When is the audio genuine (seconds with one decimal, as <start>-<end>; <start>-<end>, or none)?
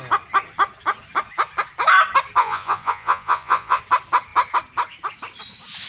0.0-2.4; 3.8-5.9